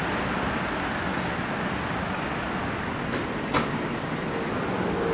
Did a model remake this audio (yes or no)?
no